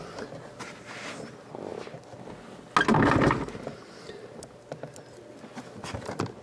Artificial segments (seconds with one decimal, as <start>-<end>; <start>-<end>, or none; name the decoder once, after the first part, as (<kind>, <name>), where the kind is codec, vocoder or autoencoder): none